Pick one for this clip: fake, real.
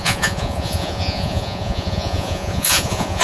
fake